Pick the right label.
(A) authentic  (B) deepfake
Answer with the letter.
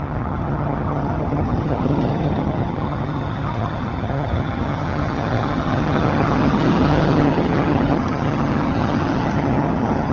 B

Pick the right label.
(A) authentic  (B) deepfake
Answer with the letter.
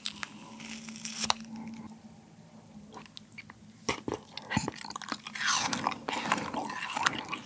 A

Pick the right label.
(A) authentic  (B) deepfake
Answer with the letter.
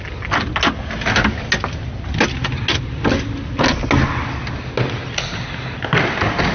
A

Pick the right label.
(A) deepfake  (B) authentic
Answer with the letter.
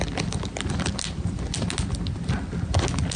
B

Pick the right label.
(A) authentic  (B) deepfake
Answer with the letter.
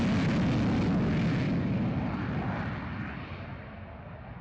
A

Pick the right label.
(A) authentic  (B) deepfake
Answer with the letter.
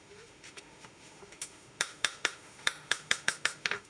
B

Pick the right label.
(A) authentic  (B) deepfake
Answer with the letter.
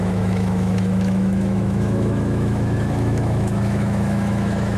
B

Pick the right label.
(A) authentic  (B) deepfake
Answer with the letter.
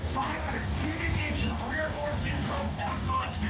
B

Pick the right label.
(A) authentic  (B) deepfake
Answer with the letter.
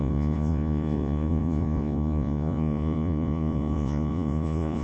B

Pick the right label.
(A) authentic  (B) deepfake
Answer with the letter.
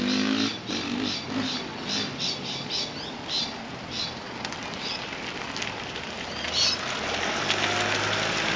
A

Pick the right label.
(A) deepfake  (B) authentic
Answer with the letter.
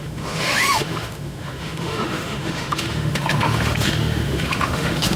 A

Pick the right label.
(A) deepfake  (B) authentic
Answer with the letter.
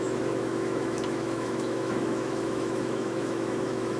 A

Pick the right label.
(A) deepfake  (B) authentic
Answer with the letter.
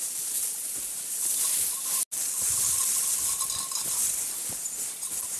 B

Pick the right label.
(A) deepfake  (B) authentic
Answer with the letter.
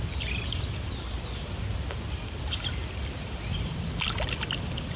B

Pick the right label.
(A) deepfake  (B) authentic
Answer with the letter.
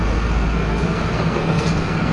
A